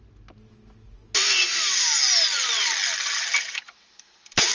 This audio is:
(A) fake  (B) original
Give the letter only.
B